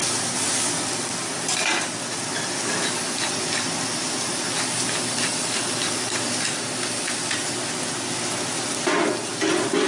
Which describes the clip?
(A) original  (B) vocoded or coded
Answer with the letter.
A